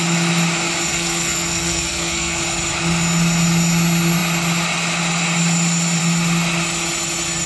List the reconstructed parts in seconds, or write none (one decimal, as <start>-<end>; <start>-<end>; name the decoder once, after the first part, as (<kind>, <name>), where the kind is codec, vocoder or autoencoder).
0.9-2.4 (codec, SNAC)